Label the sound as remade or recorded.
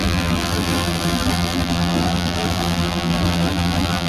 remade